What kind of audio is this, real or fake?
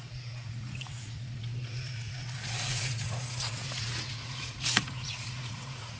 fake